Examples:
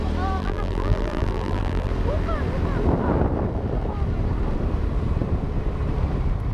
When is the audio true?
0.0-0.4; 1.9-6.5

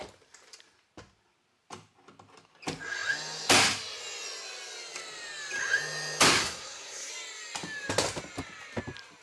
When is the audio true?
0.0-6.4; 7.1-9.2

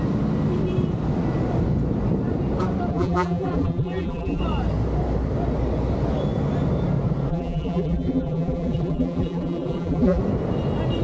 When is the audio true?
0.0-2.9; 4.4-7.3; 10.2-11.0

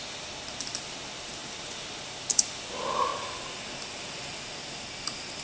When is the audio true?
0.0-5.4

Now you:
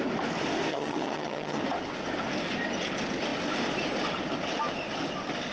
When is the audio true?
0.0-0.7; 1.6-5.5

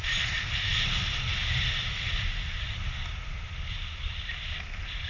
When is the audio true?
0.0-5.1